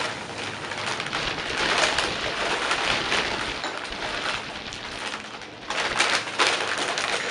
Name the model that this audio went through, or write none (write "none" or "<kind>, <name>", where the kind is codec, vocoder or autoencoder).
none